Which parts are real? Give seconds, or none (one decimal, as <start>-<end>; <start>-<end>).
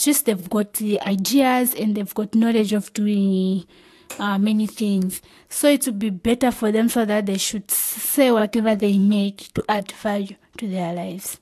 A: 0.0-0.4; 1.1-2.6; 5.3-8.4; 9.8-11.4